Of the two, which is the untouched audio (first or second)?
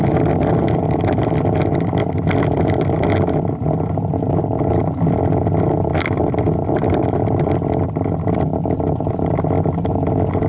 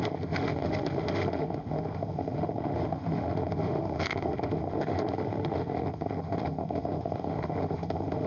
first